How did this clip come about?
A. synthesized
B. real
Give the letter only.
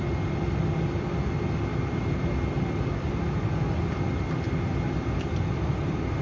B